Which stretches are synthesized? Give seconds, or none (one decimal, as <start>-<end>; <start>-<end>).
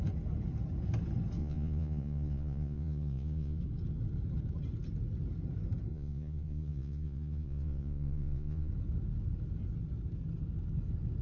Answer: 1.4-3.6; 5.9-8.7